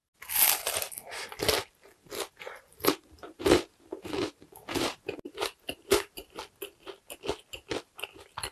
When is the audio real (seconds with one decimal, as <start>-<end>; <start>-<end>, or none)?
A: 0.0-2.7; 6.4-8.5